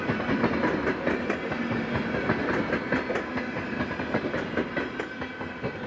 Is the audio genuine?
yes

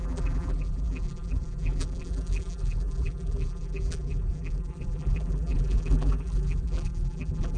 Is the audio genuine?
no